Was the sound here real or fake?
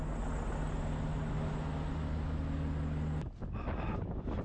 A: real